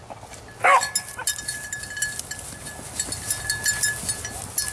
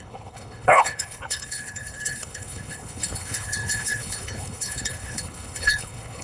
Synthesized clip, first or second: second